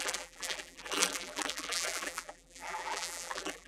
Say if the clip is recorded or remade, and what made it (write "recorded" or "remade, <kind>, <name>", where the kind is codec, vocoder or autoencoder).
remade, vocoder, BigVGAN v2